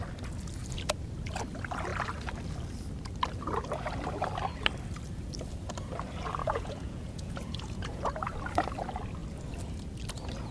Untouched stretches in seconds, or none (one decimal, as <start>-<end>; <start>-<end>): 0.0-6.4; 8.3-10.5